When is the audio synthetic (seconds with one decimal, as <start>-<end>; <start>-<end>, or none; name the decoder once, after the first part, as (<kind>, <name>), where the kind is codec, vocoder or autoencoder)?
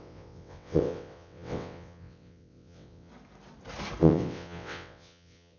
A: 0.0-3.1 (vocoder, WaveNeXt); 4.0-5.6